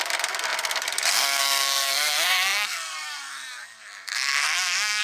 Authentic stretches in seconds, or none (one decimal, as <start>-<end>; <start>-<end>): none